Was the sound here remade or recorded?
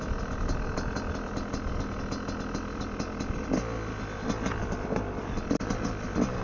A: recorded